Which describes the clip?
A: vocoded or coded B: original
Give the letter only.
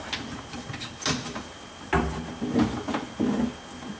B